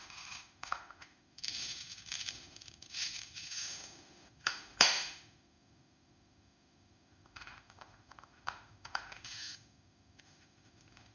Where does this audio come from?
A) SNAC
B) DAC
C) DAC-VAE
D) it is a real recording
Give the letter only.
C